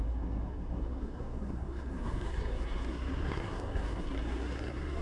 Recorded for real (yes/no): no